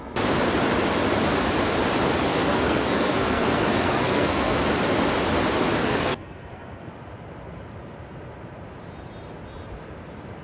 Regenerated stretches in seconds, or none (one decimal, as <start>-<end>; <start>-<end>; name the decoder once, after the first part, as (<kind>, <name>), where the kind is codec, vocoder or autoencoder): 2.3-4.6 (codec, SNAC); 5.8-6.9